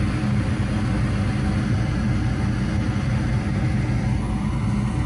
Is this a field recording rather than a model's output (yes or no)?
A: yes